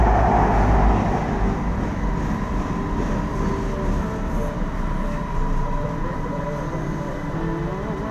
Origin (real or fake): real